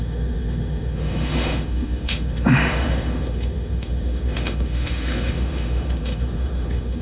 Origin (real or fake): fake